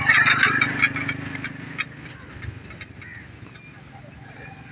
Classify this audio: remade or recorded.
recorded